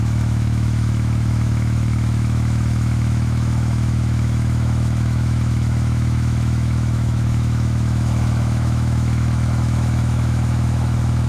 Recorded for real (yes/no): no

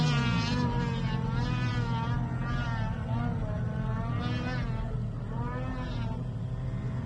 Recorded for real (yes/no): yes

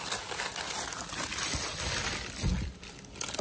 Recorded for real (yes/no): yes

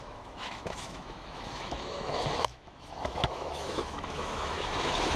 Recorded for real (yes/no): no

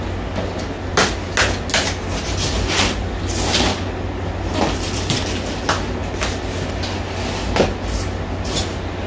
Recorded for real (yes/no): yes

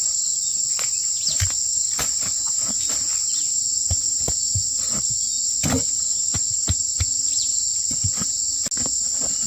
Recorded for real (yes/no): yes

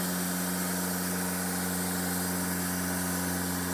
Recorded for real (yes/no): yes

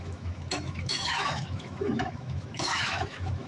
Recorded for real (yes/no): no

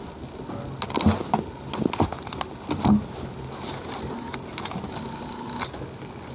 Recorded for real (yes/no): yes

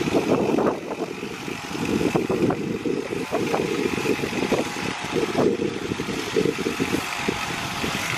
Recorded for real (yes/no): no